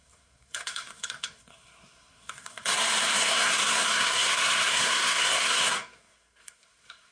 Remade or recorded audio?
remade